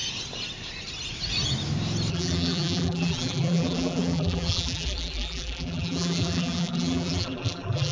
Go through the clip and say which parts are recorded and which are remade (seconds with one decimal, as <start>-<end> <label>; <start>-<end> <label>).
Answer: 0.0-2.1 recorded; 2.1-7.9 remade

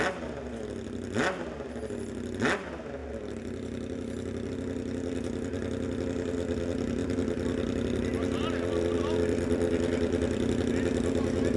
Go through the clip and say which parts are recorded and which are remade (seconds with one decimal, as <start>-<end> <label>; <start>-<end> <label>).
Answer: 0.0-3.0 recorded; 3.0-4.5 remade; 4.5-7.0 recorded; 7.0-10.7 remade; 10.7-11.6 recorded

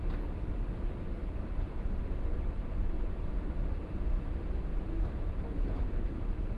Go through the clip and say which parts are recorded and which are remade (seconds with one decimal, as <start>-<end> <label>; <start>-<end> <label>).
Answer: 0.0-1.2 recorded; 1.2-3.9 remade; 3.9-4.7 recorded; 4.7-6.6 remade

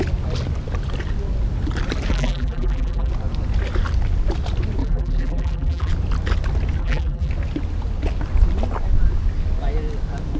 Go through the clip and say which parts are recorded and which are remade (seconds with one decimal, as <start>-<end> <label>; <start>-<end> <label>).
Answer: 0.0-2.1 recorded; 2.1-3.1 remade; 3.1-4.8 recorded; 4.8-5.9 remade; 5.9-6.8 recorded; 6.8-7.3 remade; 7.3-10.4 recorded